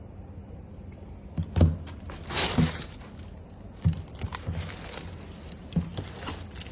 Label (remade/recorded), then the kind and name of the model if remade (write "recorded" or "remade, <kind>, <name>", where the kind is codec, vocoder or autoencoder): recorded